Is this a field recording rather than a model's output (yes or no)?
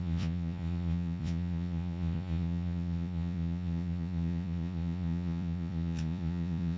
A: no